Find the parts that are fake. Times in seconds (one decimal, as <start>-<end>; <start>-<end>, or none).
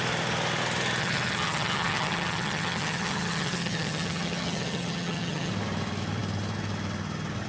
1.0-5.5